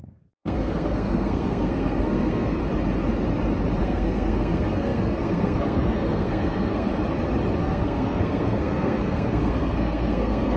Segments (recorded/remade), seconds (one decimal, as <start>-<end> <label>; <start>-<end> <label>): 0.0-2.6 remade; 2.6-3.8 recorded; 3.8-6.9 remade; 6.9-7.6 recorded; 7.6-10.6 remade